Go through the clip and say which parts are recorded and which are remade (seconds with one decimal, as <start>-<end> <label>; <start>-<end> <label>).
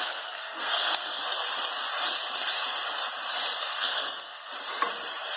0.0-1.2 remade; 1.2-3.6 recorded; 3.6-4.5 remade; 4.5-5.4 recorded